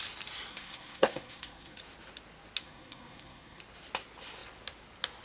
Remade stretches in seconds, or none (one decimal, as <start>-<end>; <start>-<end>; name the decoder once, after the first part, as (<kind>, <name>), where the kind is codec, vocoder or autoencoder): 0.5-1.8 (codec, SNAC); 2.6-3.6